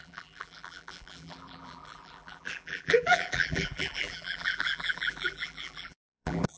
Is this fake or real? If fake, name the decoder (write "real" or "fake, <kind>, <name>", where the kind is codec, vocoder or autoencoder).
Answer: fake, vocoder, BigVGAN v2